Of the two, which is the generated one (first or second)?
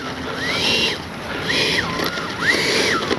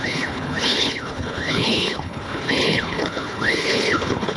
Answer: second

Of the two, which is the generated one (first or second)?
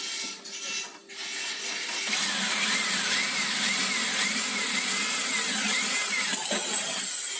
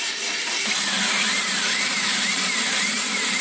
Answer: second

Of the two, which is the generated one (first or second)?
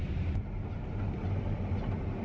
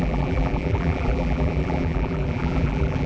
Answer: second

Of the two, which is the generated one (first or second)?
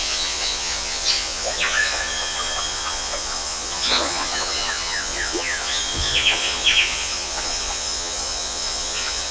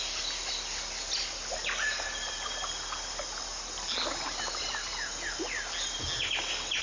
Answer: first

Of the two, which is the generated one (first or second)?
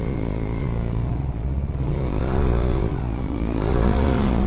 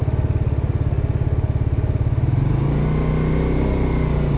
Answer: first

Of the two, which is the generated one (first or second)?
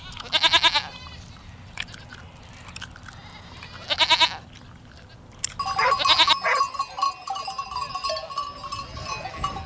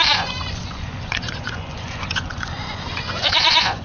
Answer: second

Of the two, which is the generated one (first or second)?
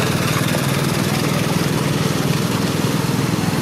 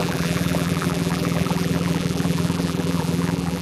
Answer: second